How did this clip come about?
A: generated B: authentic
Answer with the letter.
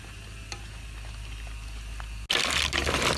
B